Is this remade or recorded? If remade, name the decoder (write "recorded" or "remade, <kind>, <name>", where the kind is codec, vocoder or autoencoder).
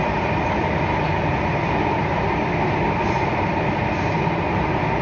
recorded